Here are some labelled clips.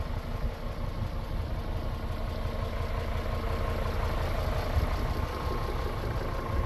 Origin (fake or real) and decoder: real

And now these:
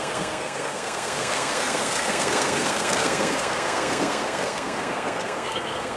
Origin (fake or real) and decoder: fake, codec, SNAC